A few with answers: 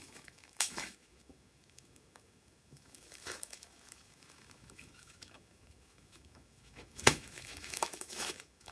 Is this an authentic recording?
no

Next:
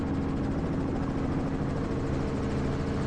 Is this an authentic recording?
yes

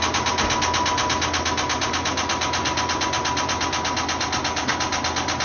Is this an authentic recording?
yes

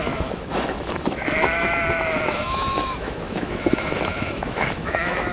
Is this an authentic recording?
no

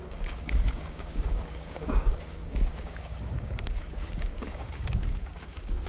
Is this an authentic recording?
no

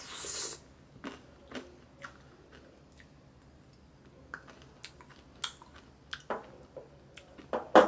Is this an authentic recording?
yes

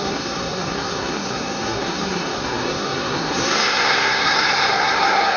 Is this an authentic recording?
no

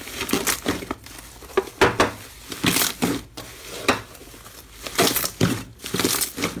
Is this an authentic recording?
yes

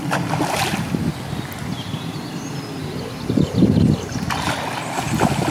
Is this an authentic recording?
yes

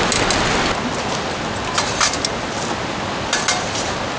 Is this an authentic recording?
yes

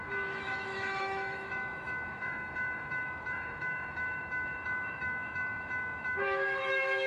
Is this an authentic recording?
no